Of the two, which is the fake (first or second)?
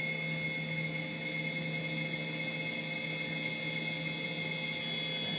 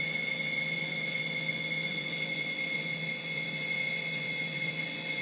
second